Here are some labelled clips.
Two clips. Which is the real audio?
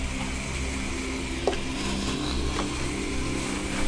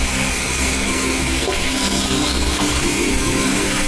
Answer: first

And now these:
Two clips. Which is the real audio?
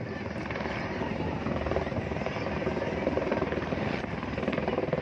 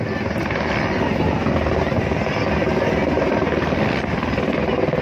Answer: second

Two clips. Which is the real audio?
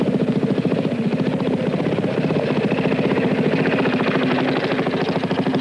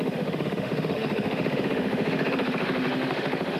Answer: first